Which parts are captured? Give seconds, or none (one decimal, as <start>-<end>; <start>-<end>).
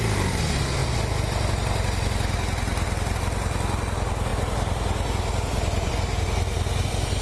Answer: 0.0-7.2